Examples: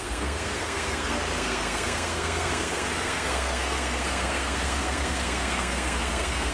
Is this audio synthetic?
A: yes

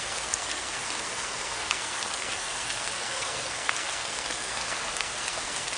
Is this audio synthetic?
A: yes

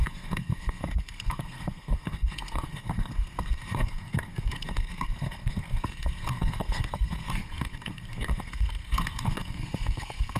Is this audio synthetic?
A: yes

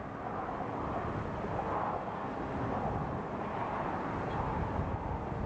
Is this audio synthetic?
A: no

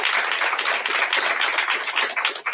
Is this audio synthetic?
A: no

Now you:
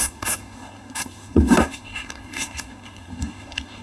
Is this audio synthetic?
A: yes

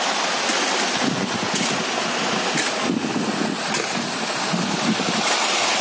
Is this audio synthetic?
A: no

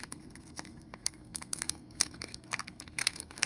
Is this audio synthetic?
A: yes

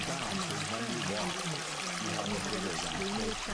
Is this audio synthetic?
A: no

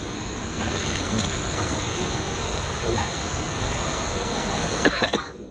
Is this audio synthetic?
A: yes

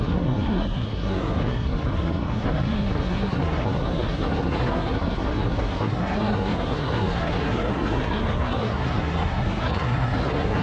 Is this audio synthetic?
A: yes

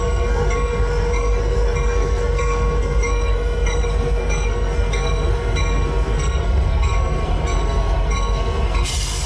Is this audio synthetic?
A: yes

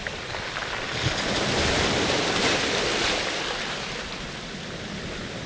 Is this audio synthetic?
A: no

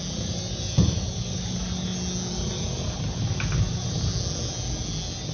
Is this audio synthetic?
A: no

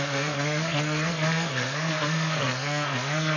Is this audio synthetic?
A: yes